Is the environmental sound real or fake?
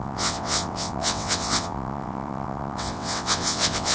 fake